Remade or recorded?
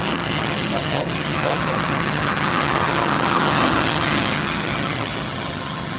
remade